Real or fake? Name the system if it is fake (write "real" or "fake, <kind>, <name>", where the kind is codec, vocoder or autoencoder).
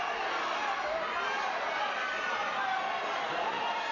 real